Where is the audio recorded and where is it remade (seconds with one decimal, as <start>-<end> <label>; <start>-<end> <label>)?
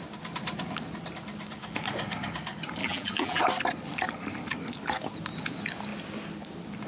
0.0-2.8 recorded; 2.8-3.4 remade; 3.4-6.9 recorded